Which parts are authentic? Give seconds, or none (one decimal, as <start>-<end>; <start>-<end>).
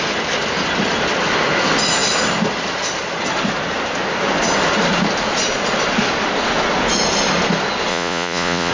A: 0.0-7.9